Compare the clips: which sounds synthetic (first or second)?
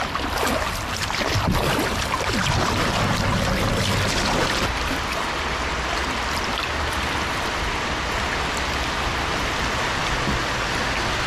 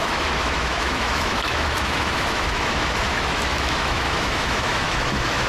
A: second